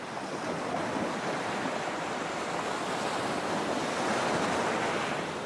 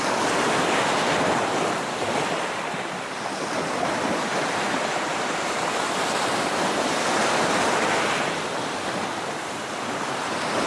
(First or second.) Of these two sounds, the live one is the first